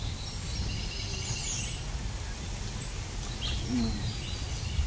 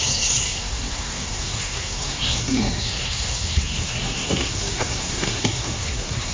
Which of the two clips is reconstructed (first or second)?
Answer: second